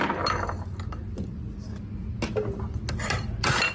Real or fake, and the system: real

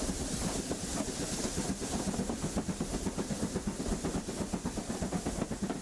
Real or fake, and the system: real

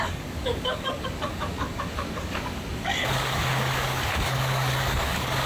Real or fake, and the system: fake, codec, DAC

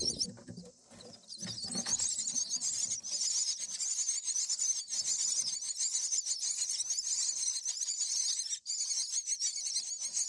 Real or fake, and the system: real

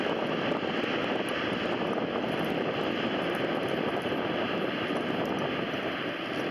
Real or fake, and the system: real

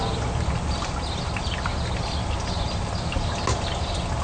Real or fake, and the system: real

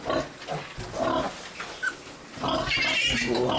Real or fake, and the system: real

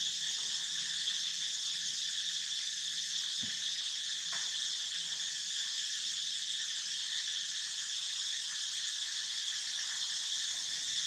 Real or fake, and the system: real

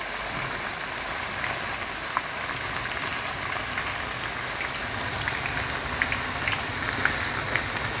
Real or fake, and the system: real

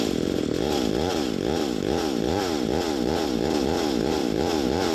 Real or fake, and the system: real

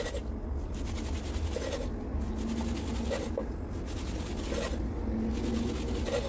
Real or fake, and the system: real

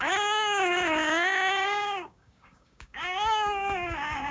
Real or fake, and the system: fake, codec, DAC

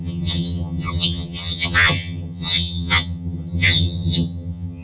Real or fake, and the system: fake, vocoder, HiFi-GAN